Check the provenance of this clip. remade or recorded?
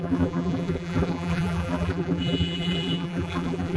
remade